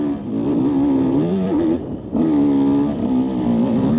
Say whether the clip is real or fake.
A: real